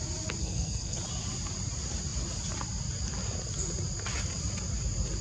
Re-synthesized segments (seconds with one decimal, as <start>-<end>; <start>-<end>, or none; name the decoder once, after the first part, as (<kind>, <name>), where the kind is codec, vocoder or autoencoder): 0.4-1.0 (codec, SNAC)